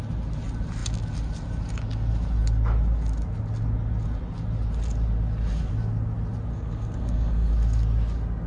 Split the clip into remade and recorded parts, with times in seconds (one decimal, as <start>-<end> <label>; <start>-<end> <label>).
0.0-6.5 recorded; 6.5-7.5 remade; 7.5-8.5 recorded

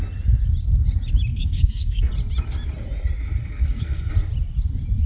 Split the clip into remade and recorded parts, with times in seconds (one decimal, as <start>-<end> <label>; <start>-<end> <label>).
0.0-1.3 recorded; 1.3-2.1 remade; 2.1-3.4 recorded; 3.4-4.1 remade; 4.1-5.1 recorded

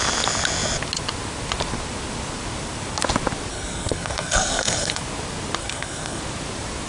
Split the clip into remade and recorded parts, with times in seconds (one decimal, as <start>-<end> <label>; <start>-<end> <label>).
0.0-3.5 recorded; 3.5-5.0 remade; 5.0-5.6 recorded; 5.6-6.2 remade; 6.2-6.9 recorded

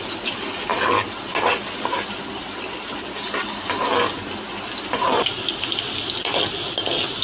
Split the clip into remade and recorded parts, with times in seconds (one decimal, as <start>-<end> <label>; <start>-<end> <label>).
0.0-7.2 recorded

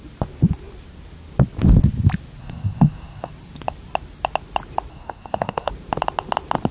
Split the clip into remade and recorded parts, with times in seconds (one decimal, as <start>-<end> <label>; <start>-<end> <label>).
0.0-2.4 recorded; 2.4-3.3 remade; 3.3-4.9 recorded; 4.9-5.7 remade; 5.7-6.7 recorded